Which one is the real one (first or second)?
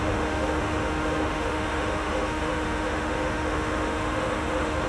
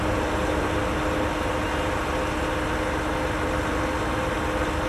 second